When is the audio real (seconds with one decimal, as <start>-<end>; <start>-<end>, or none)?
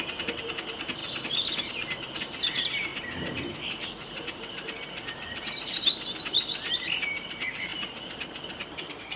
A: 0.0-9.2